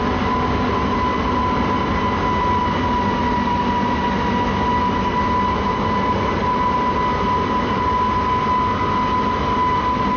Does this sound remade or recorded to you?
recorded